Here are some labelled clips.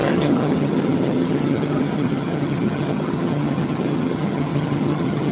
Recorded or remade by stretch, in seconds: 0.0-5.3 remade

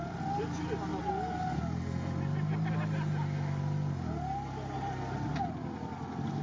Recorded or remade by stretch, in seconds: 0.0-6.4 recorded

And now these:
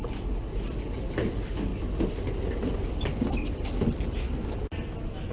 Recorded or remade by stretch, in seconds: 0.0-5.3 recorded

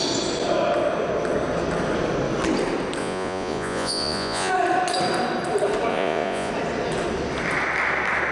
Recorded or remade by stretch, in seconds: 0.0-3.0 recorded; 3.0-4.5 remade; 4.5-5.9 recorded; 5.9-6.5 remade; 6.5-8.3 recorded

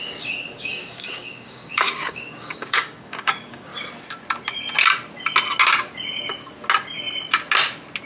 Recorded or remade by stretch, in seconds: 0.0-3.7 remade; 3.7-8.1 recorded

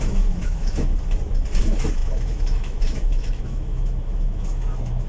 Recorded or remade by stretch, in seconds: 0.0-0.9 remade; 0.9-1.6 recorded; 1.6-5.1 remade

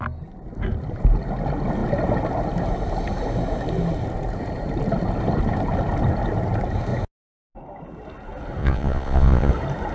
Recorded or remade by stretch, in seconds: 0.0-8.6 recorded; 8.6-9.5 remade; 9.5-9.9 recorded

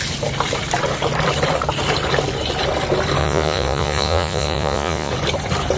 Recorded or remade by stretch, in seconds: 0.0-3.2 recorded; 3.2-5.1 remade; 5.1-5.8 recorded